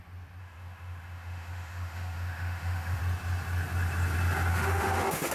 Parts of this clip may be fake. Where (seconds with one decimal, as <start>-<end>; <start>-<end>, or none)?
0.4-3.0; 4.5-5.3